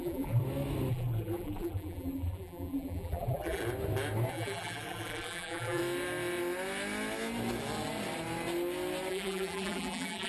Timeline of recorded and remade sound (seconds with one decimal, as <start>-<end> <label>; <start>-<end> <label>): 0.0-0.4 remade; 0.4-0.9 recorded; 0.9-3.6 remade; 3.6-4.3 recorded; 4.3-5.8 remade; 5.8-9.1 recorded; 9.1-10.3 remade